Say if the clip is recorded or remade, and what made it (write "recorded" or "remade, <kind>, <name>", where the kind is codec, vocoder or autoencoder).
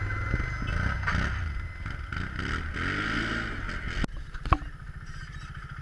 recorded